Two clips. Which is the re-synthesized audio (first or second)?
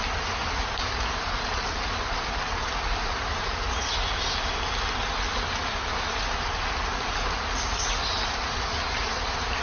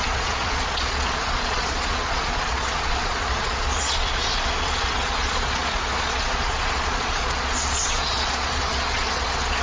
second